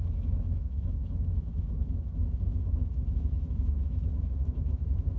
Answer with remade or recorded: remade